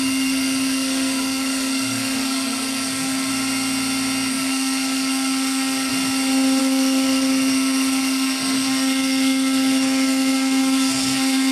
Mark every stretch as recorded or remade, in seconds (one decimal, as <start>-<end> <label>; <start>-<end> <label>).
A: 0.0-3.3 remade; 3.3-4.3 recorded; 4.3-5.9 remade; 5.9-6.6 recorded; 6.6-11.5 remade